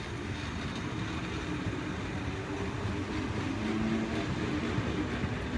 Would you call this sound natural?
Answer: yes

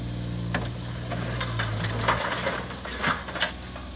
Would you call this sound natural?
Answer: yes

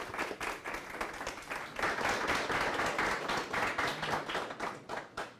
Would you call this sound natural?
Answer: yes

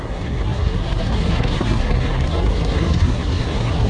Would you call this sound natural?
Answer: no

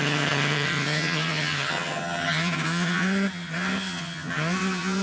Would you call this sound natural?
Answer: no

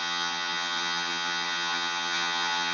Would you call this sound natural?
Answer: no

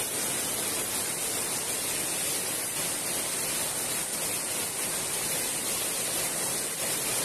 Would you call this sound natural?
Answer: yes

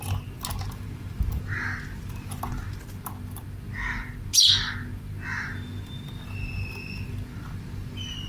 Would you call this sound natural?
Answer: yes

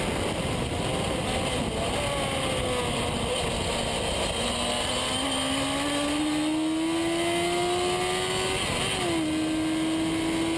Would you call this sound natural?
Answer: yes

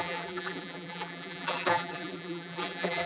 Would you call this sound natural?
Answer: no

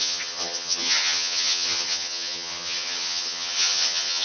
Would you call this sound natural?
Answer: no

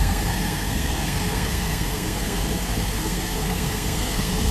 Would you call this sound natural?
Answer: no